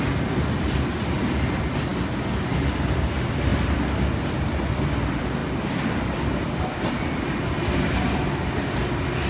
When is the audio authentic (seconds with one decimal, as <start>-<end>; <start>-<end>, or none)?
0.0-9.3